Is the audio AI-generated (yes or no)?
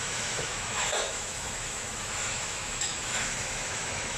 yes